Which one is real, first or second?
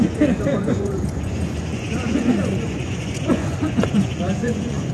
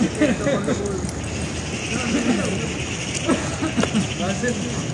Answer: second